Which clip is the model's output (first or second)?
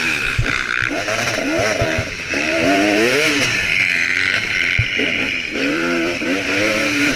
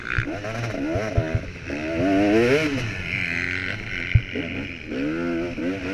first